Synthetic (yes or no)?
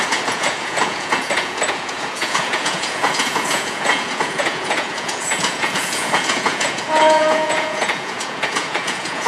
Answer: yes